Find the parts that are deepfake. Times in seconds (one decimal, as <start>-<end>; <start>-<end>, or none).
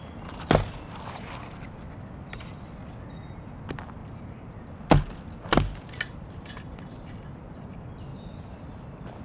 8.1-8.6